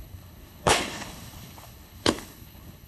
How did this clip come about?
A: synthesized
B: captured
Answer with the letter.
A